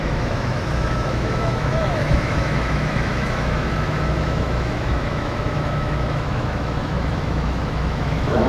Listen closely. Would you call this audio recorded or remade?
remade